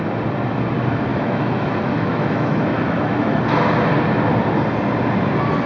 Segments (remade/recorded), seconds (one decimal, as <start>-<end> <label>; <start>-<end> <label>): 0.0-1.1 recorded; 1.1-3.4 remade; 3.4-5.7 recorded